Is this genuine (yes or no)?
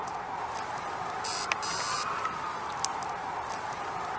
yes